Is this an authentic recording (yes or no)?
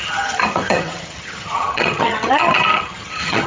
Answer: no